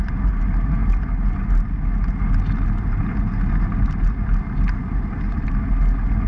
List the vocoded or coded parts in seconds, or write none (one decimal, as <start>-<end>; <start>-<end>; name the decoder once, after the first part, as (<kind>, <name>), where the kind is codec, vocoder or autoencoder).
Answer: none